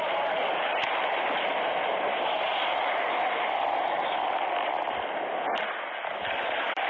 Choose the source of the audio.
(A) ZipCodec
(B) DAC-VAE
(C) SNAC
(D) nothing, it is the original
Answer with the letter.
D